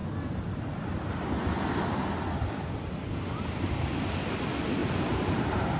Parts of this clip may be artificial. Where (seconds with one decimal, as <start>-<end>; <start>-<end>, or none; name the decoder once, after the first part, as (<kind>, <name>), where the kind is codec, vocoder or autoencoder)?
4.8-5.8 (vocoder, BigVGAN v2)